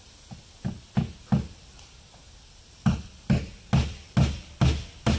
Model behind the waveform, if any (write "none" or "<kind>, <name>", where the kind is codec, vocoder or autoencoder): none